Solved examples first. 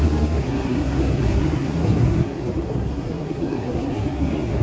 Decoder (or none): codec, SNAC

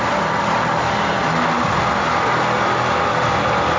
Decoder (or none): none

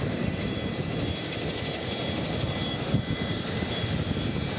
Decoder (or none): vocoder, BigVGAN v2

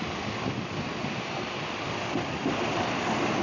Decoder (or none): none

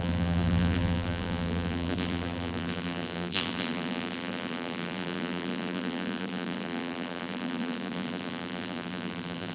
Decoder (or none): vocoder, BigVGAN v2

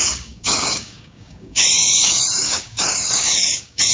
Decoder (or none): codec, DAC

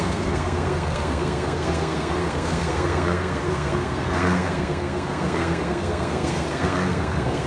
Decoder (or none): codec, SNAC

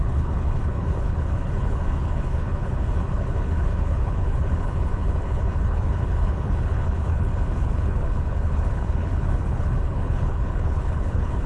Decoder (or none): codec, HILCodec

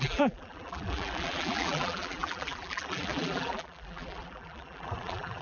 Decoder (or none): vocoder, BigVGAN v2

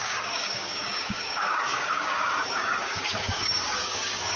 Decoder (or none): codec, DAC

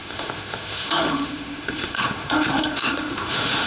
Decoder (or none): autoencoder, DAC-VAE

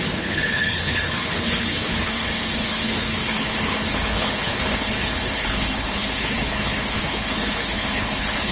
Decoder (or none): codec, HILCodec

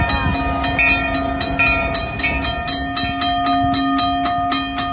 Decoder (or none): none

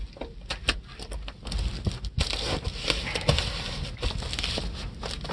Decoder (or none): none